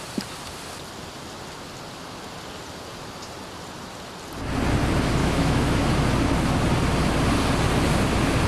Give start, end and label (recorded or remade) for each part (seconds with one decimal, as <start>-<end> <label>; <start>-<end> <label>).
0.0-5.2 recorded; 5.2-5.9 remade; 5.9-8.5 recorded